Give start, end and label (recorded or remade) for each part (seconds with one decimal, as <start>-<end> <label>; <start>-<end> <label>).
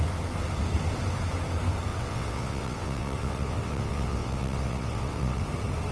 0.0-1.9 recorded; 1.9-5.4 remade; 5.4-5.9 recorded